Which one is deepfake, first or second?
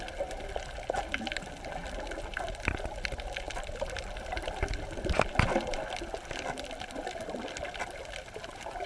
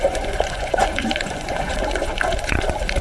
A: second